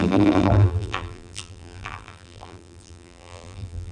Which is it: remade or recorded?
remade